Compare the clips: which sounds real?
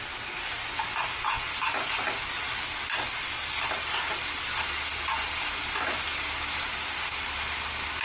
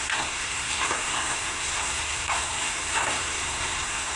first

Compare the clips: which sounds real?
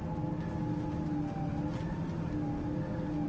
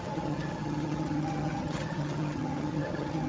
first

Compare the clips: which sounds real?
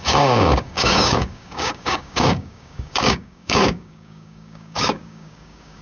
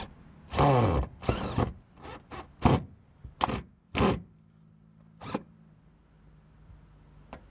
second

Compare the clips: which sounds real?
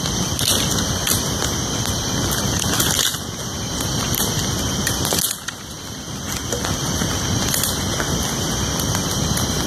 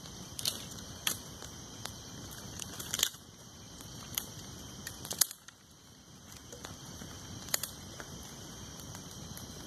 first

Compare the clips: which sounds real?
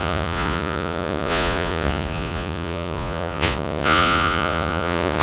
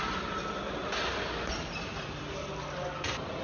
second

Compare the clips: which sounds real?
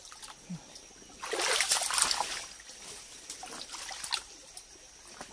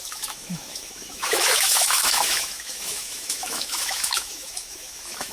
first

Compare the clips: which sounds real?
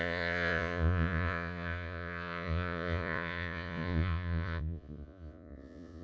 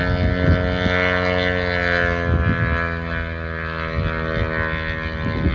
second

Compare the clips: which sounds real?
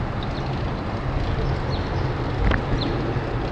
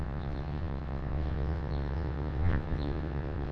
first